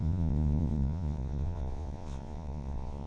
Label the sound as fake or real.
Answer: fake